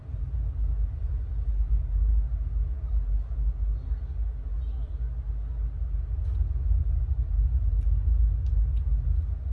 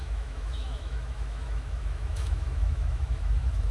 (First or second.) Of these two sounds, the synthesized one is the second